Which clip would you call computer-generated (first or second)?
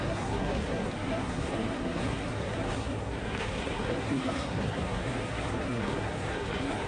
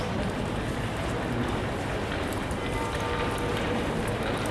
first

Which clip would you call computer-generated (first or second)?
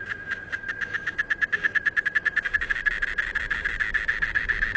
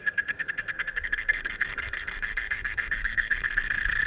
second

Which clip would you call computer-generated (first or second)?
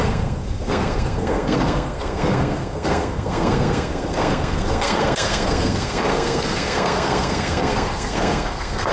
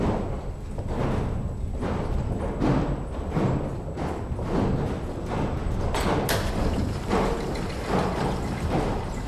first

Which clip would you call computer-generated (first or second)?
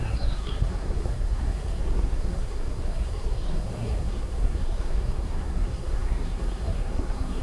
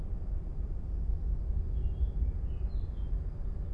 first